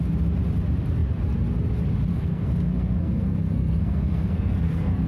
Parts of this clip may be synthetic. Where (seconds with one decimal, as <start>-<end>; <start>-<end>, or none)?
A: 2.1-5.1

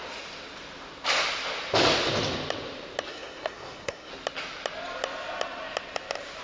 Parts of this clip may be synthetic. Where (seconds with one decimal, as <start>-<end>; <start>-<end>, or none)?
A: 3.1-4.1

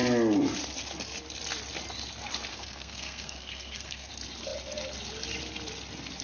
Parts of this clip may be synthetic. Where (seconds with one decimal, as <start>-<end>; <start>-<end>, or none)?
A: 2.5-4.1

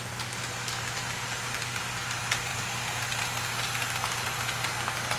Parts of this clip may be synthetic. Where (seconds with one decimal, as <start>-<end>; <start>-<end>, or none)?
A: none

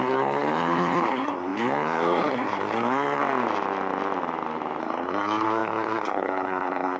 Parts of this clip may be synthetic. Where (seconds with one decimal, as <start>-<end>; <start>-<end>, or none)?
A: 0.0-3.2; 4.8-7.0

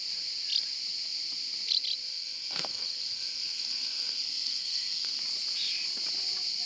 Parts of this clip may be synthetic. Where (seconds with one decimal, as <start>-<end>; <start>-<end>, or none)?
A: 2.1-5.2

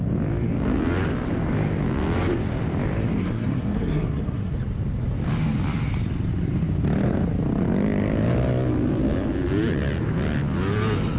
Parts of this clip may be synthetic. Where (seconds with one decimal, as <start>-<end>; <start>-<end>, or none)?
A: 3.2-4.5